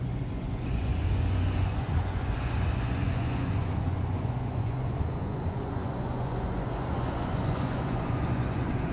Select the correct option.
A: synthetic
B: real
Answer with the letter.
A